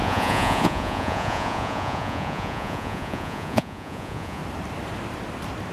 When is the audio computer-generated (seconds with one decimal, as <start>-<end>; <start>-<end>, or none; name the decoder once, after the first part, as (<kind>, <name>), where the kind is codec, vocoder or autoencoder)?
0.0-4.4 (vocoder, Vocos)